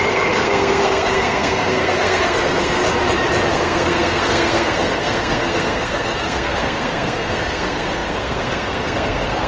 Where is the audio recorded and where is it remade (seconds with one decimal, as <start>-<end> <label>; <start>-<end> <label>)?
0.0-2.8 remade; 2.8-3.5 recorded; 3.5-9.5 remade

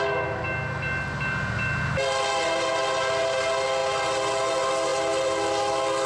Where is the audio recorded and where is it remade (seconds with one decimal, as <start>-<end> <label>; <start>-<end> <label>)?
0.0-6.1 recorded

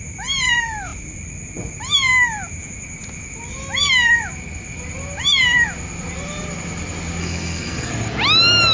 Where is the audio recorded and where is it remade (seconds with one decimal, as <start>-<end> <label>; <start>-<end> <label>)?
0.0-7.2 recorded; 7.2-7.9 remade; 7.9-8.7 recorded

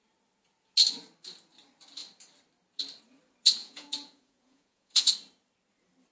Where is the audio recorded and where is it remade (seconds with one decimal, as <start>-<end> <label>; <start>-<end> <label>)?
0.0-3.6 recorded; 3.6-5.1 remade; 5.1-6.1 recorded

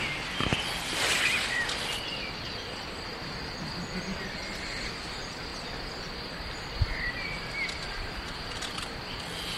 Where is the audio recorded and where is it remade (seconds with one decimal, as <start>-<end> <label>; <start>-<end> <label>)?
0.0-9.6 recorded

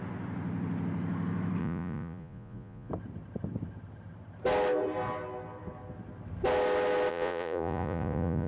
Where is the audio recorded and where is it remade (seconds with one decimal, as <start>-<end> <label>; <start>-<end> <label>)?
0.0-1.6 recorded; 1.6-2.9 remade; 2.9-7.1 recorded; 7.1-8.5 remade

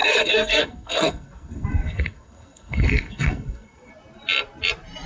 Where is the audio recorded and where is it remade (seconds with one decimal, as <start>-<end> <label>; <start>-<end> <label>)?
0.0-3.9 remade; 3.9-5.1 recorded

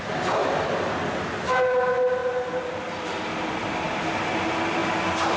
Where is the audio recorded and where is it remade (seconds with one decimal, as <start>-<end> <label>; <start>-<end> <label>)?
0.0-0.4 recorded; 0.4-1.2 remade; 1.2-5.4 recorded